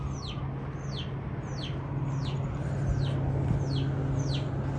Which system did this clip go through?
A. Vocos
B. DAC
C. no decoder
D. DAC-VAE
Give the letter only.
C